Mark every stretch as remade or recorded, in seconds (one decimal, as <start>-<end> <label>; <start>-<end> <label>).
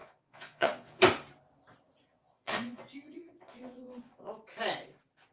0.0-1.0 remade; 1.0-2.1 recorded; 2.1-4.3 remade; 4.3-5.3 recorded